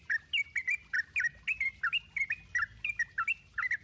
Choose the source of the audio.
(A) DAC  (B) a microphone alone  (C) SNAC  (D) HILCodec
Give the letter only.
B